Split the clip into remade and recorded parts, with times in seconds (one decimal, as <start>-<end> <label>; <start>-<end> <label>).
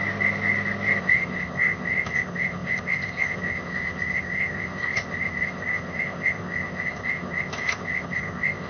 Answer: 0.0-1.0 recorded; 1.0-8.7 remade